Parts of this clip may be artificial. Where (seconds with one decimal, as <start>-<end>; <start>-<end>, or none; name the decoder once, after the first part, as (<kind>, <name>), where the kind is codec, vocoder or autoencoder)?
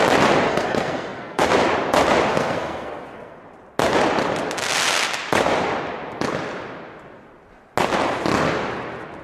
0.5-1.4 (codec, SNAC); 2.3-3.4